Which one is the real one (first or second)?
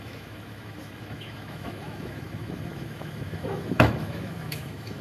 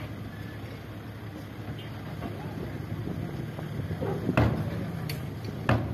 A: second